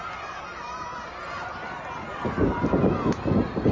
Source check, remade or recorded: recorded